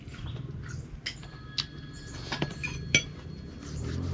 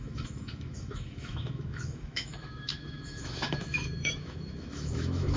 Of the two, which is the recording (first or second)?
first